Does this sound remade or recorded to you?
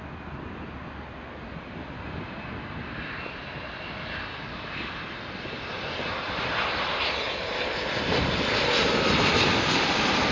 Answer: recorded